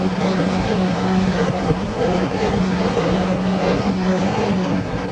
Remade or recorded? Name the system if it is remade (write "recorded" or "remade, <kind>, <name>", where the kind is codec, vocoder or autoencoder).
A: remade, codec, SNAC